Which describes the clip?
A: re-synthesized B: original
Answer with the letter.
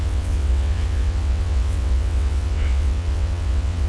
A